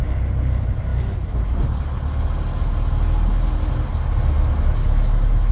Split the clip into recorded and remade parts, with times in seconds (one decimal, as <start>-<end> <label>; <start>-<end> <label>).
0.0-4.8 recorded; 4.8-5.5 remade